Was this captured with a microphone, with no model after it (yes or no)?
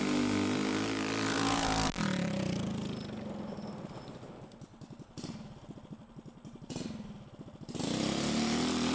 yes